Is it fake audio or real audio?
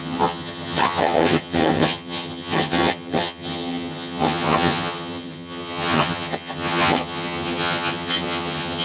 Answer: fake